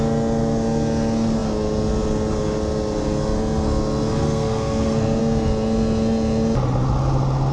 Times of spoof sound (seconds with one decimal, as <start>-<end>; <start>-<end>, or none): 4.1-5.2